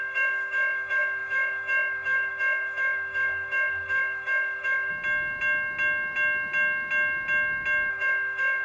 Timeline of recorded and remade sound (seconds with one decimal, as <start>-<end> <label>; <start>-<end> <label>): 0.0-4.9 remade; 4.9-7.9 recorded; 7.9-8.6 remade